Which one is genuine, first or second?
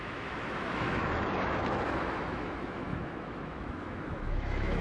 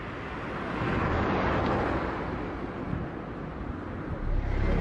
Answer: second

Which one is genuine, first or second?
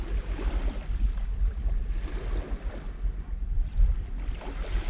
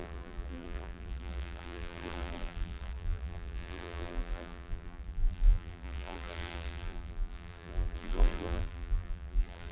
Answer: first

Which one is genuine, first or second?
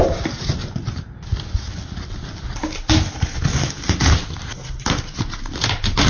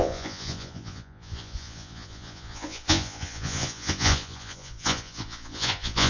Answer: first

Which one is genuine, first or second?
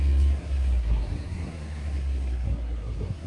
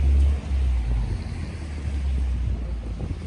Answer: second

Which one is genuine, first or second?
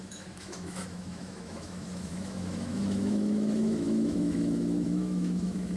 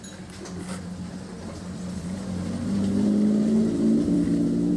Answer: second